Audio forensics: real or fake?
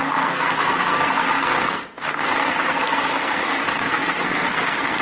fake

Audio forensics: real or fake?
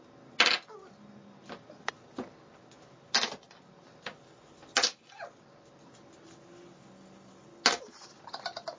real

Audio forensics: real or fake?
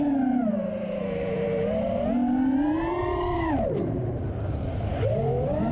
fake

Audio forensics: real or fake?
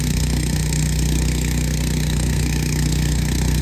fake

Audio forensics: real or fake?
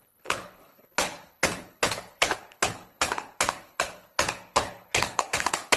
fake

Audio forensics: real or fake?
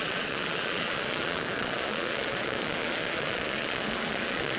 fake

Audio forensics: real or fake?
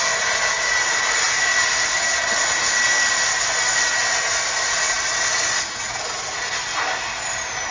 real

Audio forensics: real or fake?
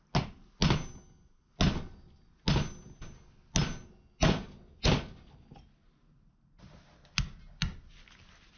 real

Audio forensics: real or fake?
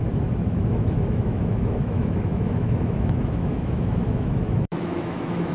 fake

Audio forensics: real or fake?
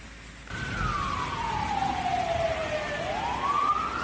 real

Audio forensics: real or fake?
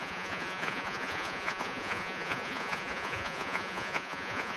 fake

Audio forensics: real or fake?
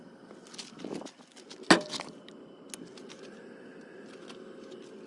real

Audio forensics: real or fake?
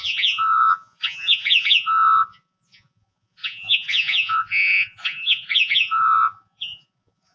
fake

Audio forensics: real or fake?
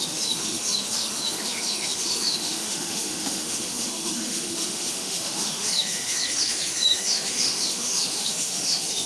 fake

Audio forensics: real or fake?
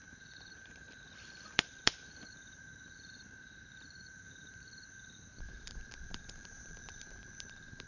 fake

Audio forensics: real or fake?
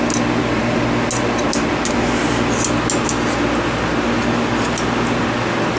real